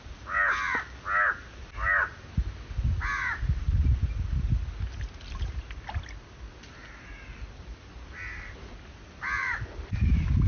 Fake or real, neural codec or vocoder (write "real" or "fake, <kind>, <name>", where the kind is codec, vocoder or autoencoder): real